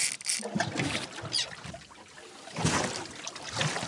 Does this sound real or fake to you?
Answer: real